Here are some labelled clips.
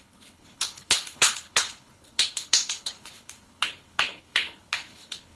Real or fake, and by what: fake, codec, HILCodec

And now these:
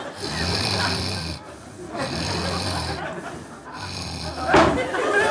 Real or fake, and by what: real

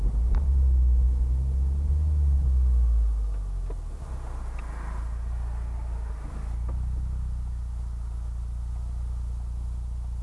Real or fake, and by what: real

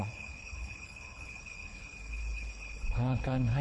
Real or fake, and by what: fake, codec, HILCodec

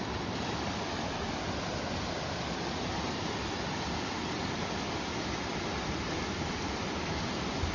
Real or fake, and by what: real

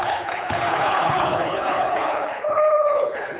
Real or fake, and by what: fake, codec, HILCodec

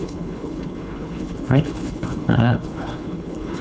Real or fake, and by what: fake, codec, HILCodec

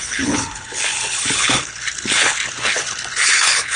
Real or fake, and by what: fake, codec, HILCodec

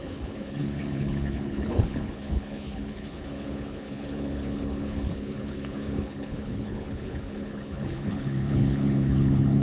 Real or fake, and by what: fake, codec, HILCodec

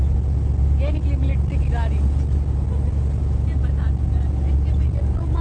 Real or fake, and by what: real